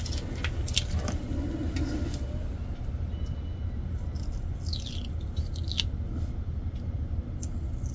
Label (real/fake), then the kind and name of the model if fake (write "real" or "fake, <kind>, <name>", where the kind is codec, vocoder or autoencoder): real